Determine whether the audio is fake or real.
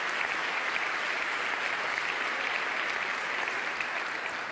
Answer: real